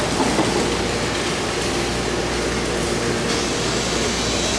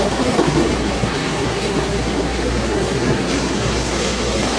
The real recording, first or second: first